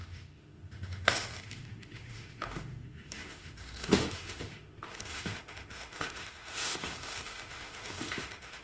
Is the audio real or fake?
fake